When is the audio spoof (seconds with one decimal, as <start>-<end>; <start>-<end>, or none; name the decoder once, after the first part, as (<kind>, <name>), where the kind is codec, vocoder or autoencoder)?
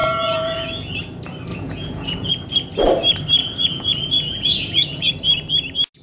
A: 0.0-0.9 (vocoder, Vocos); 1.5-2.3; 3.4-5.1